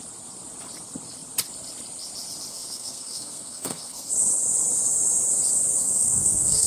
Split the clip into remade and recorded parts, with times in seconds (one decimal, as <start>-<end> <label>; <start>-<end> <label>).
0.0-2.5 recorded; 2.5-4.1 remade; 4.1-5.7 recorded; 5.7-6.7 remade